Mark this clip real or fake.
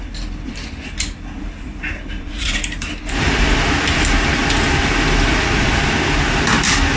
fake